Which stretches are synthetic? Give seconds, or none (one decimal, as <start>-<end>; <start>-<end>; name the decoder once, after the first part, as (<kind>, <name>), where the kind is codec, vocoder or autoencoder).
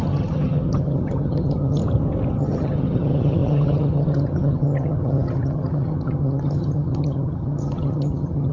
0.0-1.8 (vocoder, HiFi-GAN); 2.3-8.5